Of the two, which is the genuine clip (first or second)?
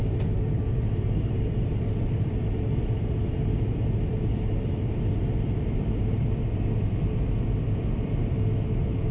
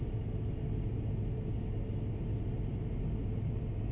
second